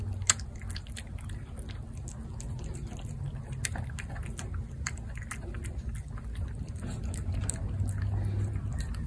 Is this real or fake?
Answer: real